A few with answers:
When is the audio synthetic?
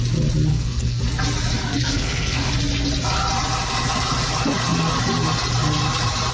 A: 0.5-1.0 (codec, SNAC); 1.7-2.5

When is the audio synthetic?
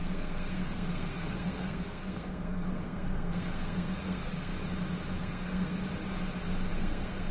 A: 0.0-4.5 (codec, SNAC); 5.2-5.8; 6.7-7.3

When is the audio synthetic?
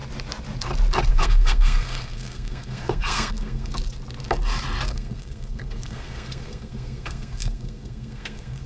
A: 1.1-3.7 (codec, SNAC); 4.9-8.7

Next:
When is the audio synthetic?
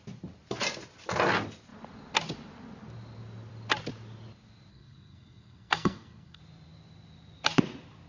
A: 4.7-6.4 (codec, SNAC)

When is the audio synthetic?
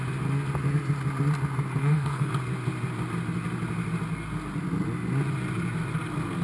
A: 1.8-2.3 (codec, SNAC)